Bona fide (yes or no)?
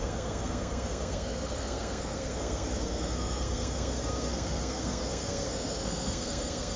no